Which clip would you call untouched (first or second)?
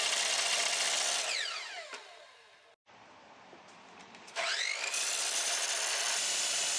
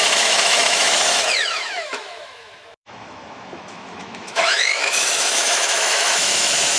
first